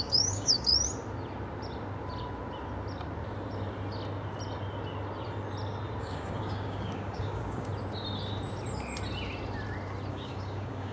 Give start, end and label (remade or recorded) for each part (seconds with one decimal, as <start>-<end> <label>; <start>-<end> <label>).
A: 0.0-0.7 remade; 0.7-6.0 recorded; 6.0-7.7 remade; 7.7-10.1 recorded; 10.1-10.9 remade